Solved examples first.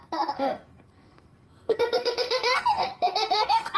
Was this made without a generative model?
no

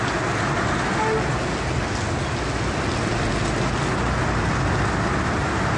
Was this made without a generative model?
yes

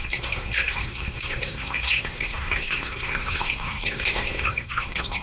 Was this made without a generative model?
no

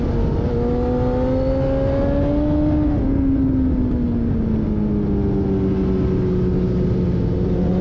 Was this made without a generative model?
yes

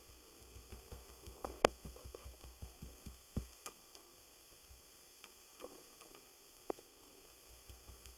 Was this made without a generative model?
no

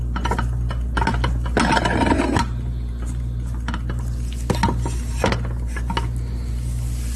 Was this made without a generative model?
yes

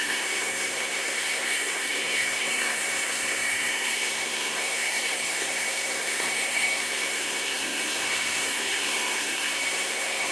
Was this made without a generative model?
no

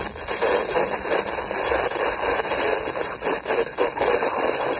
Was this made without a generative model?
yes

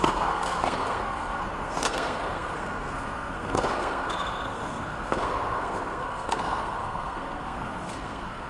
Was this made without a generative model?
no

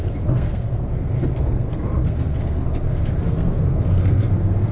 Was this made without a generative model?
no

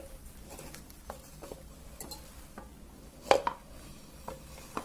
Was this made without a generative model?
yes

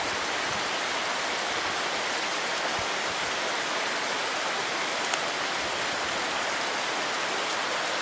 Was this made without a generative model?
yes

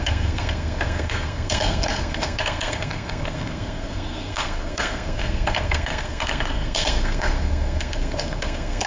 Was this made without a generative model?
no